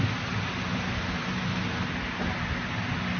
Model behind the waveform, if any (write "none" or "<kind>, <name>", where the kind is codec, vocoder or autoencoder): none